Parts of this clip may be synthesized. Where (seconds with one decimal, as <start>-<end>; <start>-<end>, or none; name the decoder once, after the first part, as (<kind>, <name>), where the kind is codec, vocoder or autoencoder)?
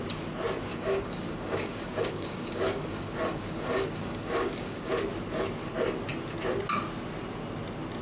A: 0.7-4.9 (codec, DAC)